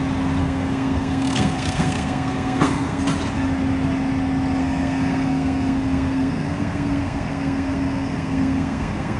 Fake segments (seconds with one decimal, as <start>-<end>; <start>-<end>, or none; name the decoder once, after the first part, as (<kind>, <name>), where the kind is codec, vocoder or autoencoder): 0.4-3.0 (codec, SNAC); 4.6-9.2